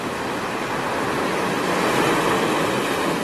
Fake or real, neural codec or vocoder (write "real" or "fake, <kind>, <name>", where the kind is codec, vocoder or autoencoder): real